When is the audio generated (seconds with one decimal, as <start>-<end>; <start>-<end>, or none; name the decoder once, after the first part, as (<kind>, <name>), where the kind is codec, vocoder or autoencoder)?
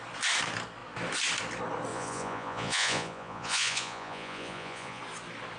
1.9-5.0 (vocoder, Vocos)